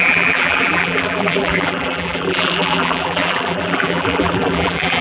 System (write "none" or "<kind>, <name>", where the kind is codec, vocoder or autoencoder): vocoder, BigVGAN v2